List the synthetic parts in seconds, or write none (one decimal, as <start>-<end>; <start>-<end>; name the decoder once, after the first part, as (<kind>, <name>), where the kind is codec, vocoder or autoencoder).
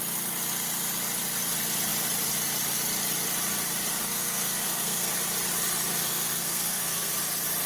4.0-5.1 (codec, SNAC); 5.9-7.1